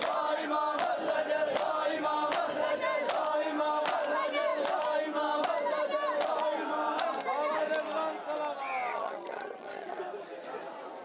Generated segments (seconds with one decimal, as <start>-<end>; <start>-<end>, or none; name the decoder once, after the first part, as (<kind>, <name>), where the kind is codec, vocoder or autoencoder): 8.9-10.0 (vocoder, HiFi-GAN)